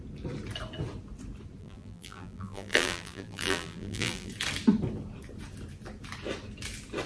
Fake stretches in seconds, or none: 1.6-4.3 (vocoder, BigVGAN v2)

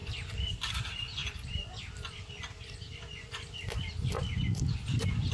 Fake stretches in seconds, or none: 0.0-0.7 (vocoder, BigVGAN v2); 4.2-5.3

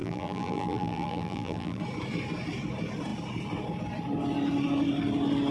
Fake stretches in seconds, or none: 0.0-1.8 (vocoder, BigVGAN v2)

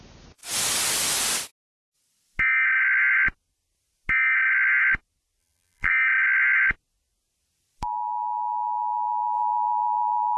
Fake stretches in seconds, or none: 5.4-5.9 (vocoder, BigVGAN v2)

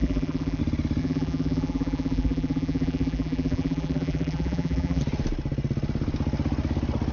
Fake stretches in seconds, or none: 0.0-0.6 (vocoder, BigVGAN v2); 1.0-5.0

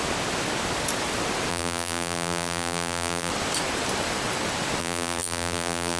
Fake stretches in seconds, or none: 1.5-3.3 (vocoder, BigVGAN v2); 4.8-6.0